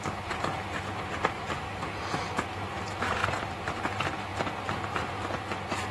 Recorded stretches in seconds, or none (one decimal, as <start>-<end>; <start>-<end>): 0.0-0.5; 2.3-5.9